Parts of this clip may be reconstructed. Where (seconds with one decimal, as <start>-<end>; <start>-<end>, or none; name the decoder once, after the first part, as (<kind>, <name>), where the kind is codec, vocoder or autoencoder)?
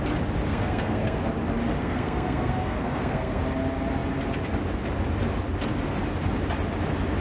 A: 0.5-1.2 (codec, SNAC); 1.8-3.4